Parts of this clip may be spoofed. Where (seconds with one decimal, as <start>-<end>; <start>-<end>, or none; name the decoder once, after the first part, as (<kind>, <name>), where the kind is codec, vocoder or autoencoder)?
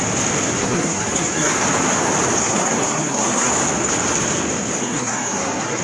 0.6-1.5 (codec, SNAC); 2.4-3.5; 4.8-5.8